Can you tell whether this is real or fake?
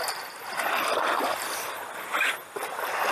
real